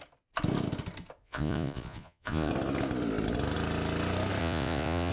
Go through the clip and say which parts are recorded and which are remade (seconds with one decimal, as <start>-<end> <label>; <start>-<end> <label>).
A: 0.0-1.2 recorded; 1.2-2.5 remade; 2.5-4.4 recorded; 4.4-5.1 remade